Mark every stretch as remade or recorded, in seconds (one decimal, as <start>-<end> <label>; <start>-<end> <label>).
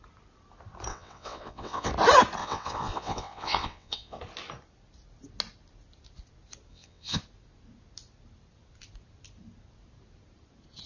0.0-0.9 recorded; 0.9-1.9 remade; 1.9-2.4 recorded; 2.4-4.2 remade; 4.2-6.7 recorded; 6.7-7.2 remade; 7.2-10.9 recorded